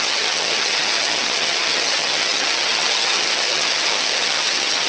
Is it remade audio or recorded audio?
remade